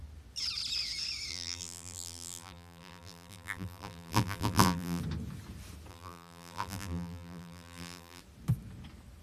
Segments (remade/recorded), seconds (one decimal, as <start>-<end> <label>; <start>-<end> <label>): 0.0-1.3 recorded; 1.3-5.0 remade; 5.0-5.9 recorded; 5.9-8.2 remade; 8.2-9.2 recorded